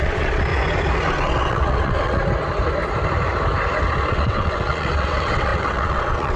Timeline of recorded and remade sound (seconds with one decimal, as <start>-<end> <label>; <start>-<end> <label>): 0.0-0.5 remade; 0.5-1.1 recorded; 1.1-2.2 remade; 2.2-4.1 recorded; 4.1-6.4 remade